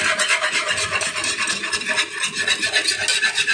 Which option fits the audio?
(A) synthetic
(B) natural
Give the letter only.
B